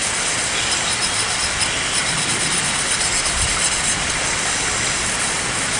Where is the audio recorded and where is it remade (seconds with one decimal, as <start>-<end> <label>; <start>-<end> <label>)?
0.0-5.8 recorded